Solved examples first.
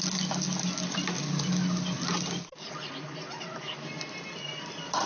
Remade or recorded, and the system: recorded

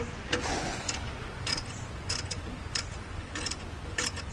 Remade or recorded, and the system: remade, vocoder, Vocos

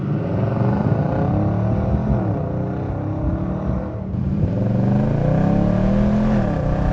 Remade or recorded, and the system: recorded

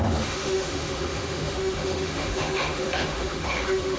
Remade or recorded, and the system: remade, autoencoder, DAC-VAE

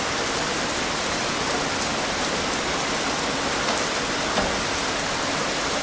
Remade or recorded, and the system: recorded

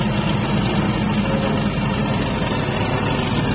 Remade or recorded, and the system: recorded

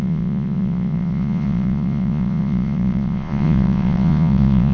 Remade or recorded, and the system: remade, vocoder, Vocos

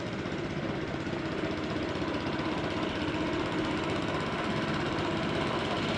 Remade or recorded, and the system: remade, vocoder, BigVGAN v2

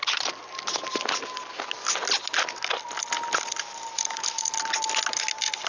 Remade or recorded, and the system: recorded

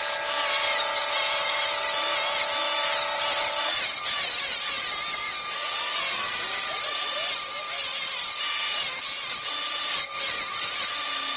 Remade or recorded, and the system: recorded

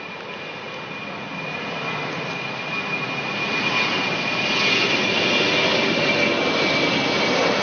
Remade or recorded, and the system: recorded